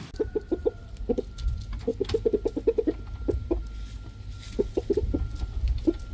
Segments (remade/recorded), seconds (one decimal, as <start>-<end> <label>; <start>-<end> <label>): 0.0-6.1 recorded